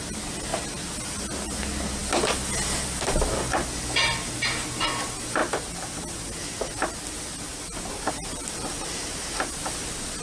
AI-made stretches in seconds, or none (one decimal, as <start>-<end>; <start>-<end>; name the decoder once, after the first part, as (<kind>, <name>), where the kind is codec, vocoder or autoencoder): none